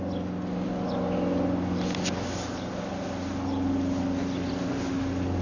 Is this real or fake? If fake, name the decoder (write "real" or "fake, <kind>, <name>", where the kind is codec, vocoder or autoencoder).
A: real